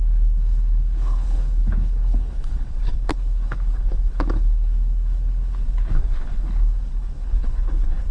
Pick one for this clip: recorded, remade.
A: remade